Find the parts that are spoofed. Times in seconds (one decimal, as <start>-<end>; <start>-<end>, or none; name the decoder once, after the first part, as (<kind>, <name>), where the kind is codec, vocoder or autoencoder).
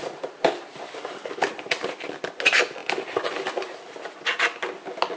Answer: 0.7-2.0 (vocoder, BigVGAN v2); 2.8-3.8